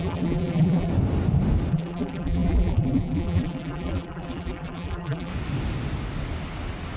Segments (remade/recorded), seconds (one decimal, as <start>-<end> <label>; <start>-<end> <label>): 0.0-0.9 remade; 0.9-1.7 recorded; 1.7-5.3 remade; 5.3-7.0 recorded